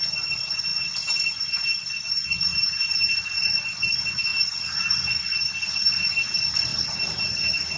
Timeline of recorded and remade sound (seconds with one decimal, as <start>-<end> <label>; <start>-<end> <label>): 0.0-2.5 recorded; 2.5-3.1 remade; 3.1-7.8 recorded

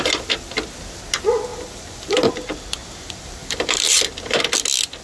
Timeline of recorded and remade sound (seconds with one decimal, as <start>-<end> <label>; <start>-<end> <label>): 0.0-1.5 recorded; 1.5-2.3 remade; 2.3-2.8 recorded; 2.8-4.0 remade; 4.0-5.0 recorded

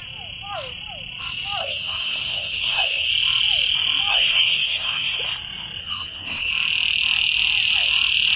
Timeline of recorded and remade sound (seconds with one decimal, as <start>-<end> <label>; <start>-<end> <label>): 0.0-1.6 recorded; 1.6-3.1 remade; 3.1-4.1 recorded; 4.1-5.2 remade; 5.2-5.8 recorded; 5.8-6.5 remade; 6.5-8.4 recorded

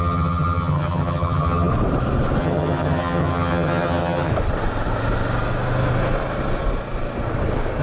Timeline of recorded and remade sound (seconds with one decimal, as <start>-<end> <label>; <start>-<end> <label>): 0.0-1.7 remade; 1.7-2.4 recorded; 2.4-4.3 remade; 4.3-7.8 recorded

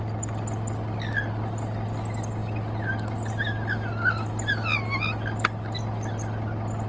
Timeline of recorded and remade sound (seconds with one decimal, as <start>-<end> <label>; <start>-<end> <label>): 0.0-6.9 recorded

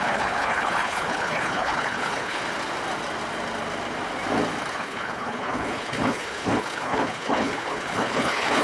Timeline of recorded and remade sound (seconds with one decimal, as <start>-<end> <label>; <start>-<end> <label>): 0.0-2.4 remade; 2.4-4.7 recorded; 4.7-8.6 remade

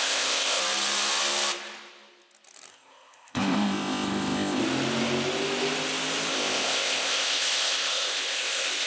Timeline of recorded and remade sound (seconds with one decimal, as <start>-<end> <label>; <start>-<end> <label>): 0.0-0.6 remade; 0.6-2.7 recorded; 2.7-4.6 remade; 4.6-6.3 recorded; 6.3-8.9 remade